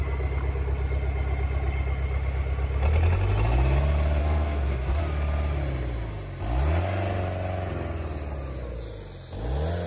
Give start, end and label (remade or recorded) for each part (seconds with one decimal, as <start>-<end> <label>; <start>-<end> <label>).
0.0-4.2 recorded; 4.2-5.0 remade; 5.0-9.9 recorded